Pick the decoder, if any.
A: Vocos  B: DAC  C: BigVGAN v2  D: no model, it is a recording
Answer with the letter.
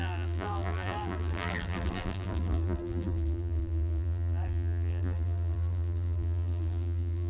C